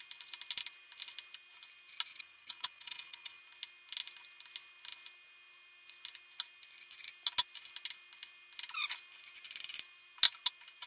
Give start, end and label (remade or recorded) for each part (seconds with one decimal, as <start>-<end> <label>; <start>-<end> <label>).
0.0-2.1 recorded; 2.1-3.4 remade; 3.4-10.9 recorded